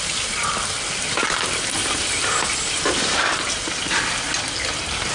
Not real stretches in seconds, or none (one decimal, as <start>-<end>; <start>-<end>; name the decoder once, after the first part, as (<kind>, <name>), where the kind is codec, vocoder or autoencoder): 1.8-2.9 (vocoder, BigVGAN v2)